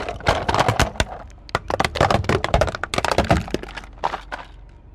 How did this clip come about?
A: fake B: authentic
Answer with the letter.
B